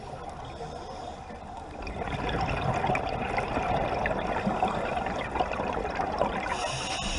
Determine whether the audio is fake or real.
real